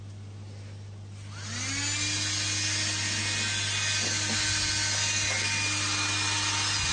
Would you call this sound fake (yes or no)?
no